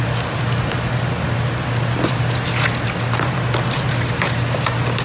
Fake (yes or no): no